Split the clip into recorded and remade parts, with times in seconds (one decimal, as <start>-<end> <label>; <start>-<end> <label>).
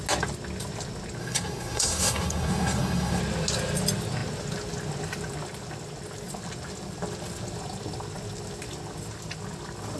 0.0-1.2 recorded; 1.2-3.2 remade; 3.2-10.0 recorded